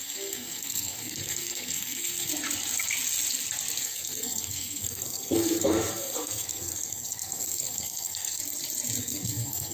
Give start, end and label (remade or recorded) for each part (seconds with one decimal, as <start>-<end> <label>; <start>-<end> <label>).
0.0-2.3 remade; 2.3-3.8 recorded; 3.8-8.4 remade; 8.4-9.0 recorded; 9.0-9.7 remade